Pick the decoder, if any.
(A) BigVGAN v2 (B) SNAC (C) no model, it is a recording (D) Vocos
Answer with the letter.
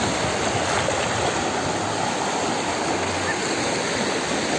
C